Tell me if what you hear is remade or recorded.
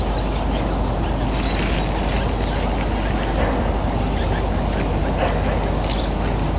recorded